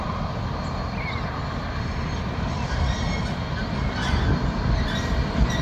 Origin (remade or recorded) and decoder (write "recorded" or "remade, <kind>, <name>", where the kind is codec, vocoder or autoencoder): recorded